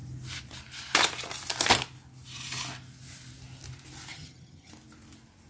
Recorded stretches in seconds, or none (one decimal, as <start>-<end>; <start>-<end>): 0.0-4.1; 4.7-5.5